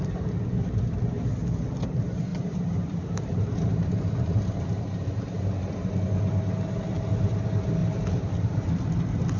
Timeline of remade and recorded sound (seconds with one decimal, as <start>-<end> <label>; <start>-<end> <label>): 0.0-2.3 recorded; 2.3-6.0 remade; 6.0-7.8 recorded; 7.8-8.9 remade; 8.9-9.4 recorded